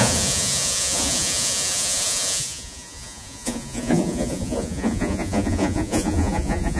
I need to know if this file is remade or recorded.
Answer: remade